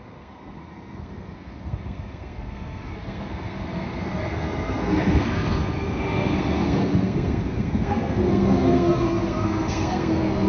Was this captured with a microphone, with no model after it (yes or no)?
no